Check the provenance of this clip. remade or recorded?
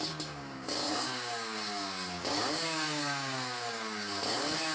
remade